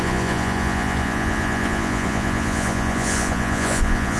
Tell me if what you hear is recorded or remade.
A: remade